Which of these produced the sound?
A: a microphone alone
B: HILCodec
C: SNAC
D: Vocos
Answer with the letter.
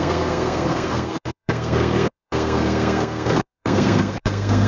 C